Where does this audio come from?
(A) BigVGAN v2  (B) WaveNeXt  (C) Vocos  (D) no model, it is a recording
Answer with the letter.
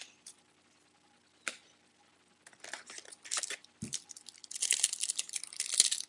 D